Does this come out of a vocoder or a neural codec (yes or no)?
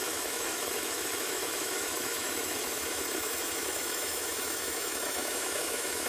yes